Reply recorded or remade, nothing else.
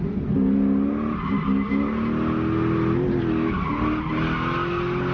recorded